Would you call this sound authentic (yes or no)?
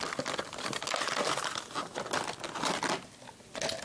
yes